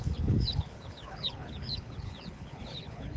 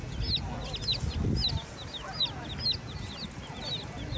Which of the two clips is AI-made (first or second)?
first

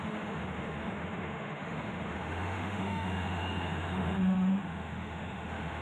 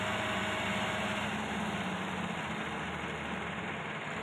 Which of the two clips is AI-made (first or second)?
first